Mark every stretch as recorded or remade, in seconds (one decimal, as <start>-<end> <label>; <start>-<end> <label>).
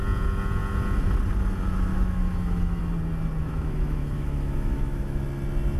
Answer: 0.0-1.9 recorded; 1.9-2.8 remade; 2.8-3.4 recorded; 3.4-5.2 remade; 5.2-5.8 recorded